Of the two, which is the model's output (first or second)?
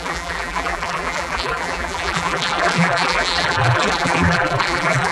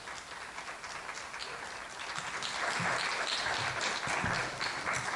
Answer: first